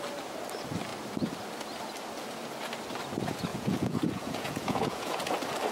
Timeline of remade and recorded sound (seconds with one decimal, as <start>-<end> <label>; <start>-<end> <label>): 0.0-3.5 recorded; 3.5-5.3 remade; 5.3-5.7 recorded